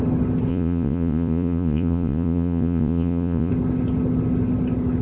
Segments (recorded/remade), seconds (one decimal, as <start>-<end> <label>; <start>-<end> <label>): 0.0-0.5 recorded; 0.5-3.5 remade; 3.5-5.0 recorded